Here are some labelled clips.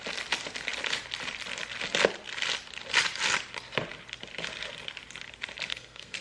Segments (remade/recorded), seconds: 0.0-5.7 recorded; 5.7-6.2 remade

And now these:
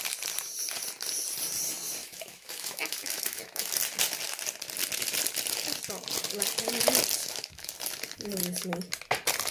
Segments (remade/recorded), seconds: 0.0-2.0 recorded; 2.0-3.7 remade; 3.7-7.2 recorded; 7.2-7.7 remade; 7.7-9.5 recorded

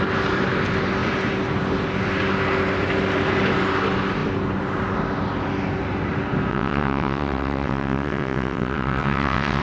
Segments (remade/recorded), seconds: 0.0-6.5 recorded; 6.5-9.6 remade

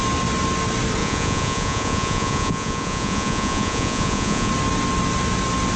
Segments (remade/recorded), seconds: 0.0-1.0 recorded; 1.0-4.5 remade; 4.5-5.8 recorded